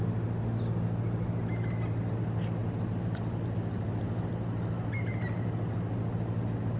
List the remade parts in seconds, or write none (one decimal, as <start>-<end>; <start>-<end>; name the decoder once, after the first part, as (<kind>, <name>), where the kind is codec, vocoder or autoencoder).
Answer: none